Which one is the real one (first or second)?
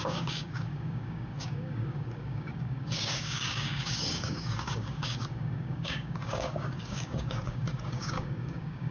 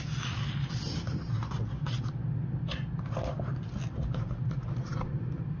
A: second